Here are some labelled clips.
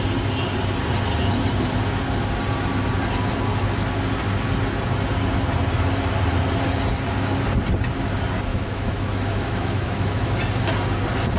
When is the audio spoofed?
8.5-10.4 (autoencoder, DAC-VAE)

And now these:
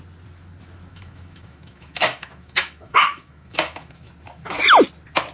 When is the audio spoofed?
0.9-4.1 (autoencoder, DAC-VAE)

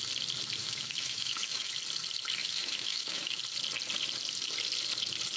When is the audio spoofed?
0.6-1.7 (autoencoder, DAC-VAE); 2.4-3.4

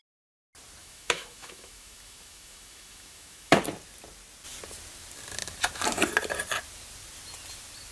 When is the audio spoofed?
0.8-3.6 (autoencoder, DAC-VAE)

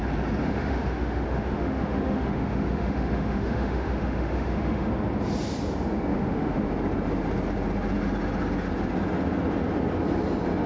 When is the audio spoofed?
0.4-4.9 (autoencoder, DAC-VAE); 6.1-6.7

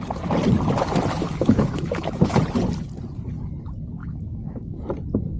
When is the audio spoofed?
1.2-2.4 (autoencoder, DAC-VAE); 4.0-4.8